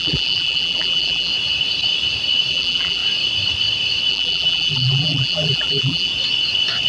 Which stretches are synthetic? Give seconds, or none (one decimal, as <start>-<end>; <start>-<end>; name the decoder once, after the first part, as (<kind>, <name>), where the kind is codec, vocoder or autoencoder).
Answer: 0.0-1.3 (vocoder, BigVGAN v2); 2.5-3.0; 4.1-6.1